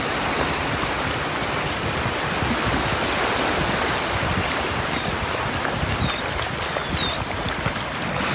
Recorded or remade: recorded